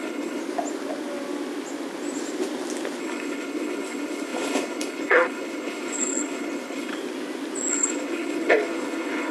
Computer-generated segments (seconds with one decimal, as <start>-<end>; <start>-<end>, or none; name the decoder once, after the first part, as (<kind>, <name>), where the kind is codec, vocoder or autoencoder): 0.0-0.4 (codec, HILCodec); 3.0-6.9; 7.7-9.3